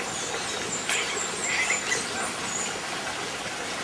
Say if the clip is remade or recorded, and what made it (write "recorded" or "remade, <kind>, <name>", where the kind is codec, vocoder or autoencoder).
recorded